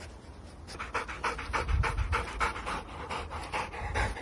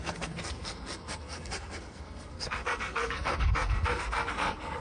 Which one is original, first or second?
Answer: first